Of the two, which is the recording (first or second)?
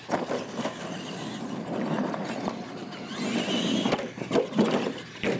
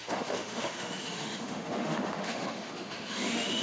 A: first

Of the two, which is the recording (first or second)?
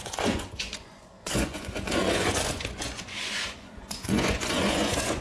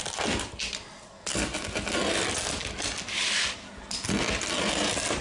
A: second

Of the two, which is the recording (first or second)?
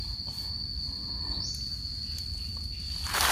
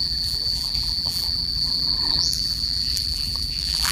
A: first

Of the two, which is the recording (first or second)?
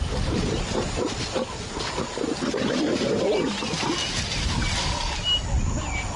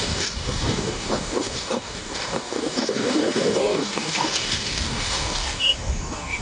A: first